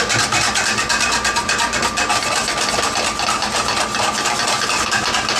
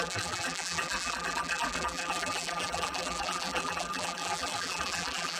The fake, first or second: second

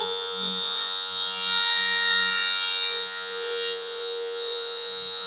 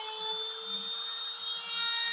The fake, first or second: first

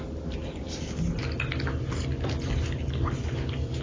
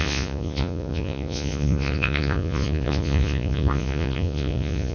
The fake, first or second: second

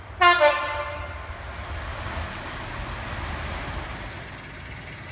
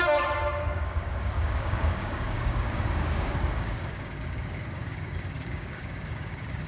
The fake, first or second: second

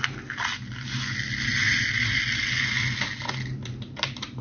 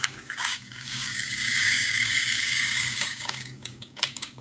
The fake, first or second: second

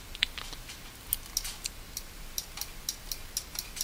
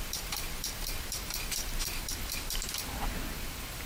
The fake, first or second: second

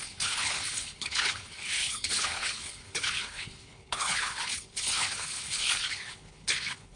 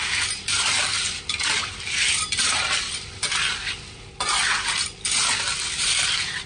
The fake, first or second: first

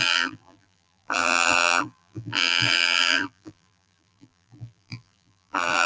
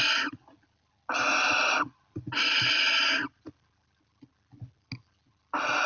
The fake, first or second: first